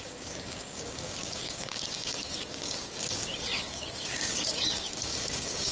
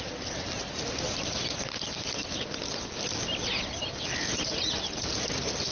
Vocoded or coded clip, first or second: first